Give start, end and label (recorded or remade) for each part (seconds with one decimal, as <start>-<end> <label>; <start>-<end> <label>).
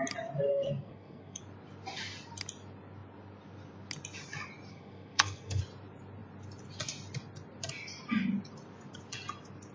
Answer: 0.0-0.5 recorded; 0.5-1.4 remade; 1.4-4.7 recorded; 4.7-5.6 remade; 5.6-9.7 recorded